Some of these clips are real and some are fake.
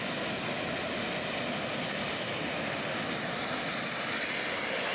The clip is real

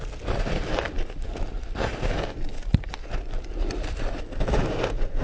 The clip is real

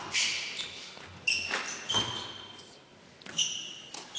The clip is real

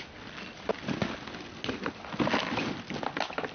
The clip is real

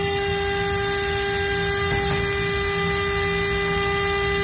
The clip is real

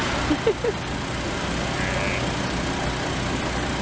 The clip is real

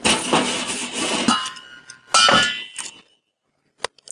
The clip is real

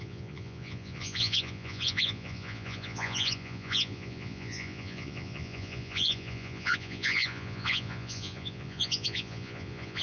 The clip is fake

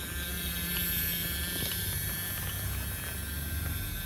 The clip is real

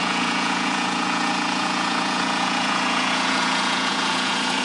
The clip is fake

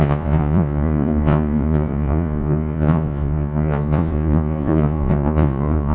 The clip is fake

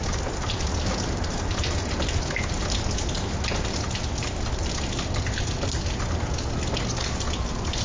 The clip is real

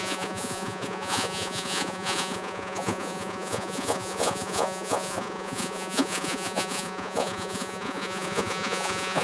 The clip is fake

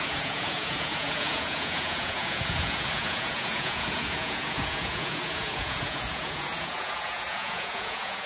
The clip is fake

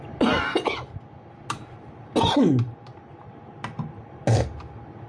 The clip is real